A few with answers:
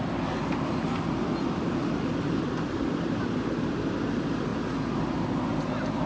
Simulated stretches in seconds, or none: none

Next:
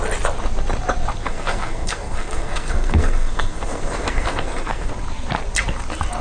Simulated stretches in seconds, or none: 1.2-4.9 (codec, SNAC)

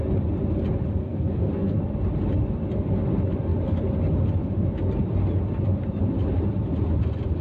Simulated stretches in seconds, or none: 1.0-1.8 (codec, SNAC)

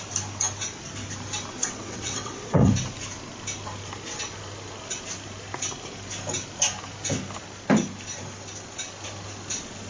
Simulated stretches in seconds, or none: 1.6-2.7 (vocoder, WaveNeXt)

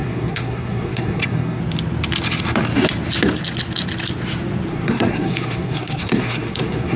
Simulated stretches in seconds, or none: 0.0-1.6 (codec, SNAC); 4.7-7.0